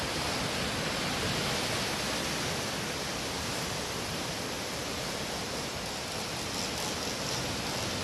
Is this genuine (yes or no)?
yes